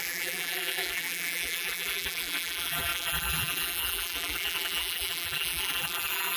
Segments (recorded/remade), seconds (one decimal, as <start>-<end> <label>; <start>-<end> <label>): 0.0-6.4 remade

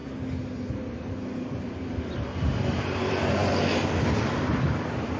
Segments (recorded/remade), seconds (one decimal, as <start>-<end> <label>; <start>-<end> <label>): 0.0-2.1 recorded; 2.1-3.4 remade; 3.4-4.5 recorded; 4.5-5.2 remade

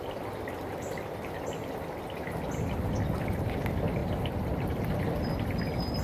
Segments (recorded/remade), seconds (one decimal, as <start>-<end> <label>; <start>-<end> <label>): 0.0-4.0 recorded; 4.0-4.5 remade; 4.5-6.0 recorded

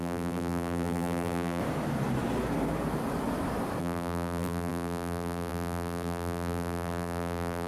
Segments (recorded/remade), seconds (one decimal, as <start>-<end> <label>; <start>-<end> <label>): 0.0-1.6 remade; 1.6-3.8 recorded; 3.8-7.7 remade